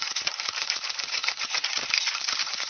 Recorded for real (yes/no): no